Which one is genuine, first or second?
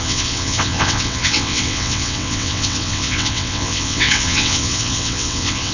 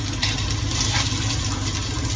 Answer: second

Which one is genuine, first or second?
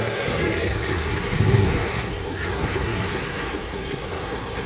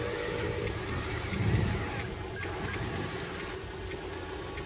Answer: second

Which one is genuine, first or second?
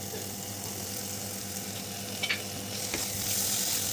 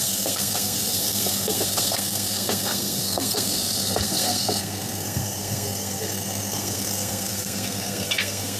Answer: first